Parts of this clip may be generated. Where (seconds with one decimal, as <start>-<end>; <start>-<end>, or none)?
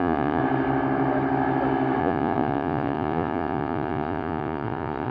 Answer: 0.0-0.4; 2.0-5.1